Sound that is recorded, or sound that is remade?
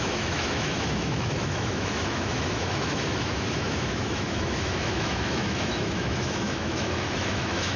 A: remade